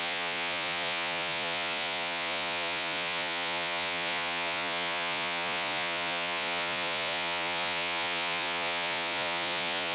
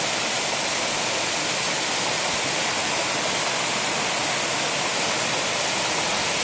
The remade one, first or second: first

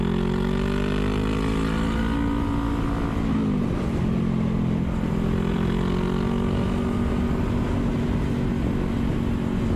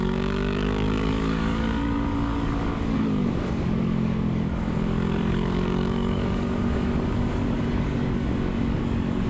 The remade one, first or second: second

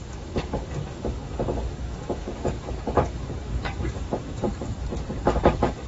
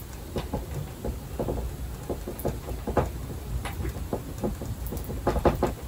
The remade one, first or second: first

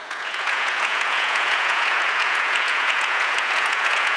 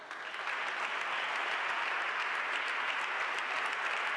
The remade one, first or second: first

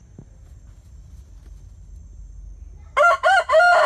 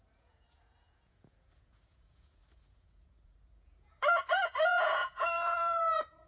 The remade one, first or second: second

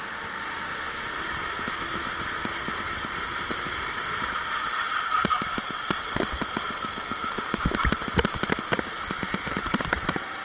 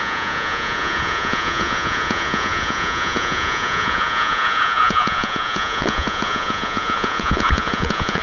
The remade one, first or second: second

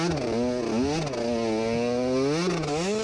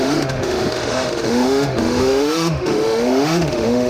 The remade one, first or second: second